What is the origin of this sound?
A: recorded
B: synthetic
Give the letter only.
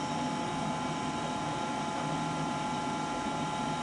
A